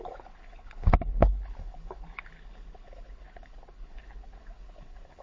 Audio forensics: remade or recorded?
remade